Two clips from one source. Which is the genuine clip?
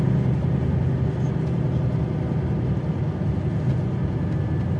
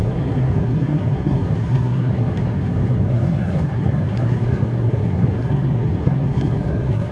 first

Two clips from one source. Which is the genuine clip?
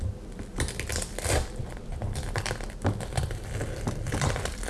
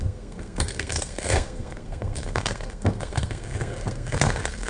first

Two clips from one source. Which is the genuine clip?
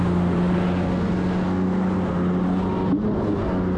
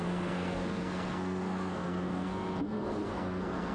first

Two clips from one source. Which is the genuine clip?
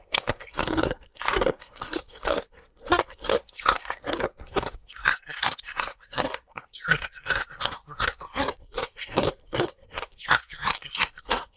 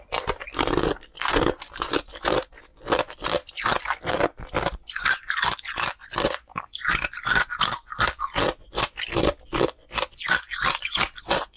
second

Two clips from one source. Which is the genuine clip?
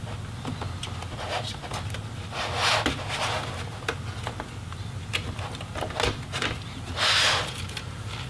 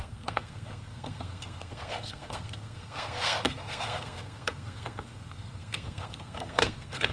first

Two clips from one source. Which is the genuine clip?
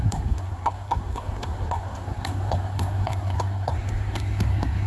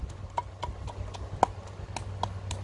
second